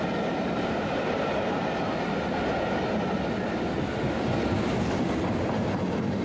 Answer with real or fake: real